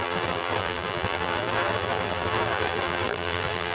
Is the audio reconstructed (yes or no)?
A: yes